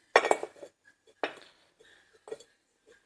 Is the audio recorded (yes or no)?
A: yes